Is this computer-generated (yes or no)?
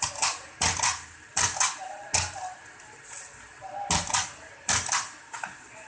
no